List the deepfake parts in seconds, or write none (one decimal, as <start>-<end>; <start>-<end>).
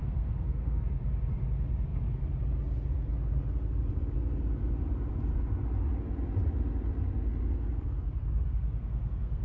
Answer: 0.0-0.8; 8.2-9.4